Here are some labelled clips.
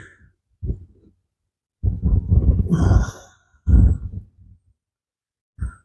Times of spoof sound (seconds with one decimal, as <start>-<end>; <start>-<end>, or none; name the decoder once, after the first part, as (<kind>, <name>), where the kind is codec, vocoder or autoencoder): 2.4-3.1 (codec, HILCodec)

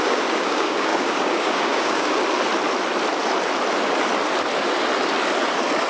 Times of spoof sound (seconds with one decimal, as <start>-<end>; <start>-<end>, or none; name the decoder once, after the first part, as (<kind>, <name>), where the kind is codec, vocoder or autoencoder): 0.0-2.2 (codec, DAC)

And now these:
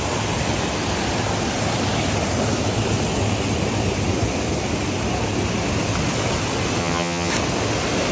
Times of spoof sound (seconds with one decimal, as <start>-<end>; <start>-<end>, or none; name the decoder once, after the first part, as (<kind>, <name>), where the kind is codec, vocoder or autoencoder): 6.8-7.3 (vocoder, HiFi-GAN)